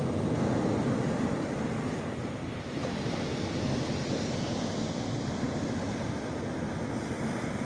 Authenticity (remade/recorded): recorded